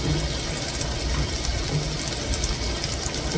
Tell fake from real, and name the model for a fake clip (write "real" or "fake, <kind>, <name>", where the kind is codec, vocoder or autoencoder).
real